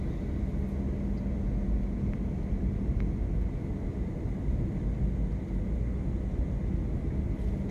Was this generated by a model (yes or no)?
no